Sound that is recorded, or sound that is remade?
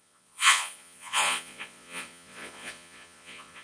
remade